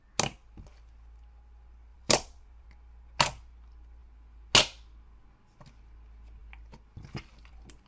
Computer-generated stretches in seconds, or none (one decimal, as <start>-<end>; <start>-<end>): 1.9-2.7